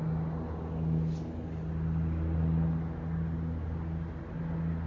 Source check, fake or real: real